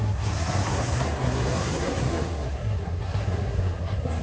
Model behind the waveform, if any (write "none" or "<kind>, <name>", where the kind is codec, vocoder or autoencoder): codec, SNAC